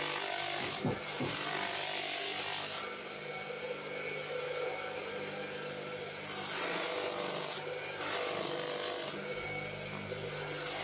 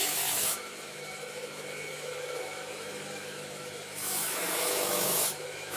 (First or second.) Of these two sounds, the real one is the first